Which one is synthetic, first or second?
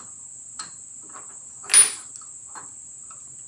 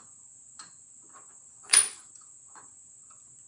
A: second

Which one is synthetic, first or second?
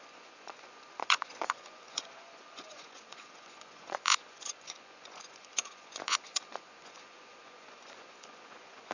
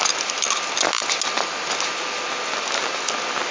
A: first